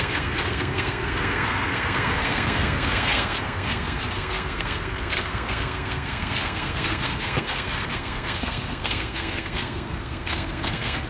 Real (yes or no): no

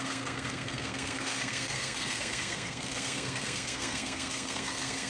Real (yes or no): no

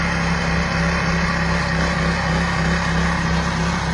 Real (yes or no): yes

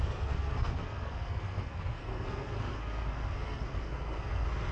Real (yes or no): no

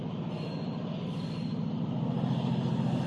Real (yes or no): yes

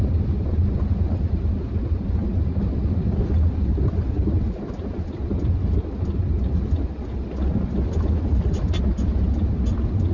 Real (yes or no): yes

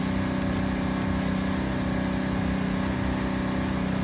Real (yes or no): yes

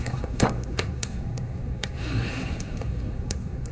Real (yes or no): no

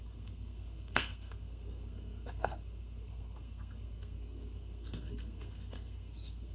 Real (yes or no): no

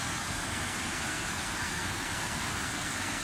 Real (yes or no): no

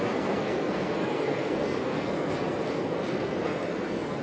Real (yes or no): no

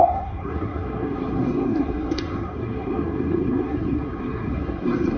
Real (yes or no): no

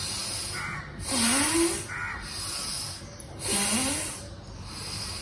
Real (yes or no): yes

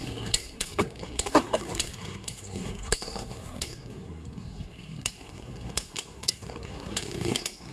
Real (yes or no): no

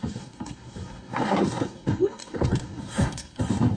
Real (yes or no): no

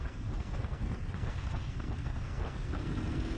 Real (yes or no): no